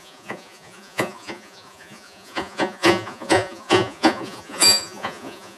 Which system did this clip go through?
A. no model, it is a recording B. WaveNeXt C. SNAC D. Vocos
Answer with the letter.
D